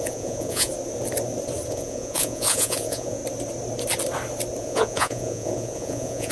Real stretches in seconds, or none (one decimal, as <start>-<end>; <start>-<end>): 0.7-1.7; 3.2-4.6